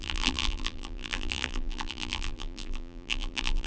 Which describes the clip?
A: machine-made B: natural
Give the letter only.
A